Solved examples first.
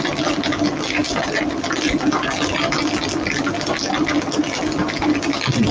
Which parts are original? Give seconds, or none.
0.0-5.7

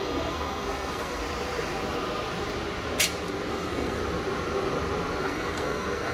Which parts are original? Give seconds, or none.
1.2-3.5; 4.0-5.2

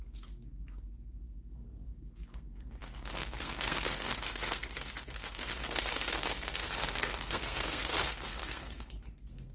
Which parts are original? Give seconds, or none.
none

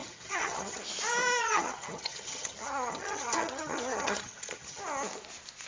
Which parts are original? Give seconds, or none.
0.8-1.4; 4.8-5.7